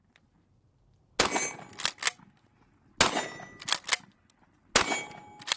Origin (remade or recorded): recorded